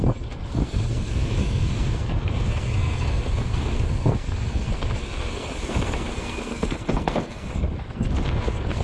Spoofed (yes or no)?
yes